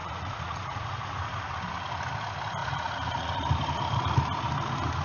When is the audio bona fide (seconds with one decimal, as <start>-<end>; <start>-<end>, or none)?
1.0-2.6; 3.4-5.0